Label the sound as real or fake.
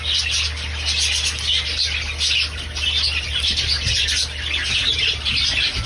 real